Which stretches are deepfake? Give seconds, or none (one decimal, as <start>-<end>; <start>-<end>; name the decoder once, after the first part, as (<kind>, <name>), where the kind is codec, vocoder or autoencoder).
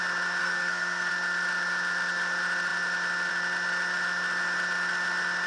0.4-1.1 (codec, SNAC)